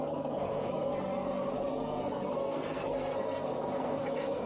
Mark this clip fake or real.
fake